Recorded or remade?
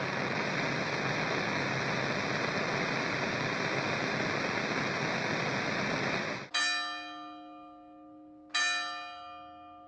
recorded